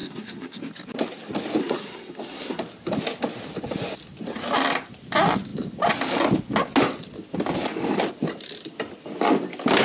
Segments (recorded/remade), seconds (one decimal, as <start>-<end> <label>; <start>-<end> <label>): 0.0-0.6 remade; 0.6-1.6 recorded; 1.6-2.6 remade; 2.6-9.8 recorded